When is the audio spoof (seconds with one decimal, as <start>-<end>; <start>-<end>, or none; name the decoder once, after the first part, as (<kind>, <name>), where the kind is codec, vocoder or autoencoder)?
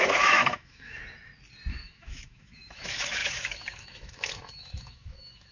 0.0-1.0 (autoencoder, DAC-VAE); 1.7-5.5